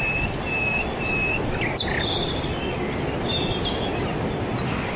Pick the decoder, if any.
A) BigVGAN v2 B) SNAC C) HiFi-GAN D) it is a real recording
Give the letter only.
D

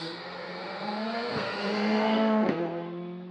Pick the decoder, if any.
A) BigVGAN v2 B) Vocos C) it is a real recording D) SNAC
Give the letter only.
D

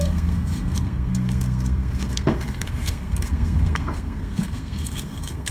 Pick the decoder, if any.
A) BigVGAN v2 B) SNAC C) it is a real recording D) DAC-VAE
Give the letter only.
B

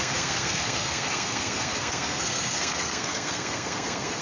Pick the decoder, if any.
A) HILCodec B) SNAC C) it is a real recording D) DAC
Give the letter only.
B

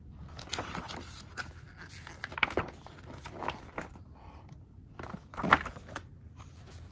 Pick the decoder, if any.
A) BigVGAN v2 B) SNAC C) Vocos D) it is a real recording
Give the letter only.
D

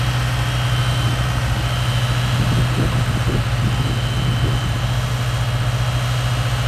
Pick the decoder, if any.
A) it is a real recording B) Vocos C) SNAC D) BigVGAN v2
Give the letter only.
A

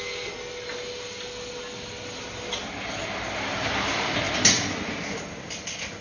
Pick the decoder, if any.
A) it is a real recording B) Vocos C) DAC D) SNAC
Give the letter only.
A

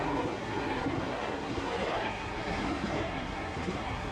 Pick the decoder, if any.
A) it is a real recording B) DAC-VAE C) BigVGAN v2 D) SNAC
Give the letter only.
D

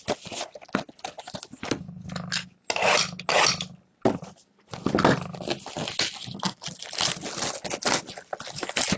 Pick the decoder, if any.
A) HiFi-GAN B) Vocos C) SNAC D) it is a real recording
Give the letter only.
D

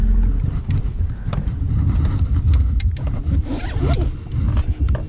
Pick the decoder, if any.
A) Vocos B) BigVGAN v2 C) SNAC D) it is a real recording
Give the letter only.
D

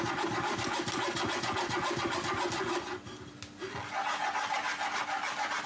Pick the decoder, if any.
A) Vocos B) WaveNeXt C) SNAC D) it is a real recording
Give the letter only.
D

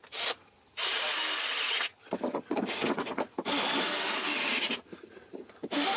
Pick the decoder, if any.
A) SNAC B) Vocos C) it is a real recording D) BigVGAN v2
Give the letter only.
C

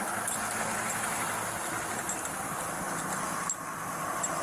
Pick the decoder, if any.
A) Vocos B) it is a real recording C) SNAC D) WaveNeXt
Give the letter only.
B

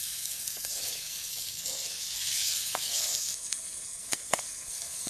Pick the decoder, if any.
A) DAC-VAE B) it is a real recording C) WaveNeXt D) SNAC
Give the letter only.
D